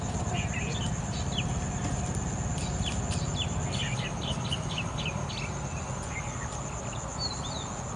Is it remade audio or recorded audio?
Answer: recorded